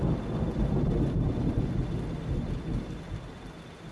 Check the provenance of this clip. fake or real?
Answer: real